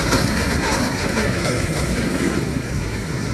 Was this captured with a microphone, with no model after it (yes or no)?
no